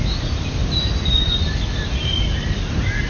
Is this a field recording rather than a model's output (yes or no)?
yes